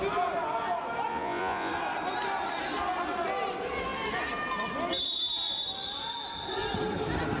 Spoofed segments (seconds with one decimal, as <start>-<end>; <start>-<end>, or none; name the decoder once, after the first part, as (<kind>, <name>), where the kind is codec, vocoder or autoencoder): 1.1-1.7 (vocoder, Vocos)